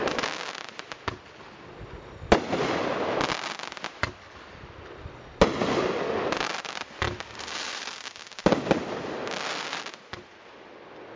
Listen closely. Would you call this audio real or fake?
real